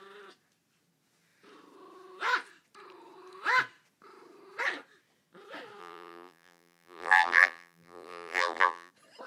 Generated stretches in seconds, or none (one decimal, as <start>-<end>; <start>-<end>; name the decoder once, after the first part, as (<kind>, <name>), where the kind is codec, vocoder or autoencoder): 5.8-8.9 (vocoder, BigVGAN v2)